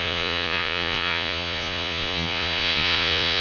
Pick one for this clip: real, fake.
fake